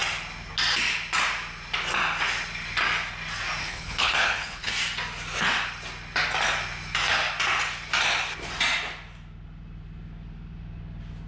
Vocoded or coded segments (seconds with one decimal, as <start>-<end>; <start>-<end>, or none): 3.6-4.7